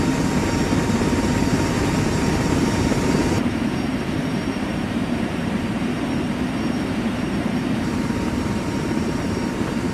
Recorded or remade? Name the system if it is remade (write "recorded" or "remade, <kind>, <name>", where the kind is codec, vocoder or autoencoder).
remade, vocoder, BigVGAN v2